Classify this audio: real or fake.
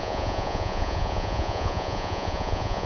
fake